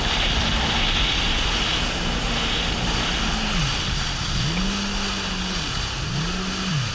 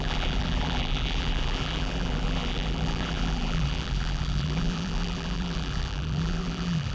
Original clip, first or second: first